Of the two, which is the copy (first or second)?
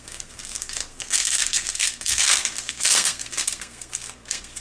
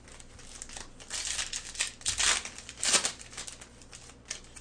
first